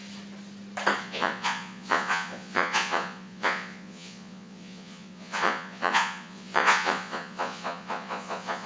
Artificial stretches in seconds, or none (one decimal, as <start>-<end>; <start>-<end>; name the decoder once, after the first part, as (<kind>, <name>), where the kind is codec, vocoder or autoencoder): 1.0-8.7 (vocoder, Vocos)